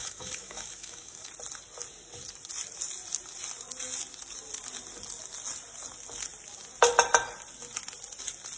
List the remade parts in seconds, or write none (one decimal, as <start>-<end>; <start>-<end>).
0.0-1.3